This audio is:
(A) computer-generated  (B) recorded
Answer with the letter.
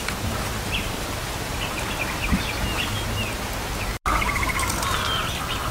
B